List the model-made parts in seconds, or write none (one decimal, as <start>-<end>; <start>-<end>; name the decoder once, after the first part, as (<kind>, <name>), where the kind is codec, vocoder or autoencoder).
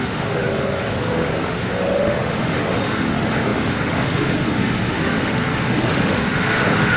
0.0-7.0 (autoencoder, DAC-VAE)